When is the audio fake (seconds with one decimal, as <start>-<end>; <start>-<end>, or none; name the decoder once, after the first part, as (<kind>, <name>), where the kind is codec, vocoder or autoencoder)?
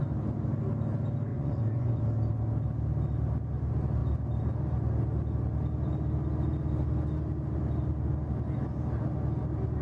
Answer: 1.3-2.0 (vocoder, Vocos)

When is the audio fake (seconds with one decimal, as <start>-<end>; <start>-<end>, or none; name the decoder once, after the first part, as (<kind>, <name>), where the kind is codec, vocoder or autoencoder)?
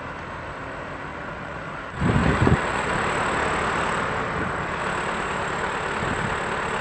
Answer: 1.1-1.6 (vocoder, Vocos); 2.2-2.9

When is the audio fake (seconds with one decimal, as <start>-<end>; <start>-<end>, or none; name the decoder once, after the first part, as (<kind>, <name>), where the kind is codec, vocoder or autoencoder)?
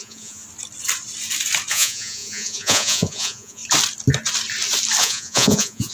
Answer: 0.0-0.4 (vocoder, Vocos); 1.7-3.6; 5.0-5.9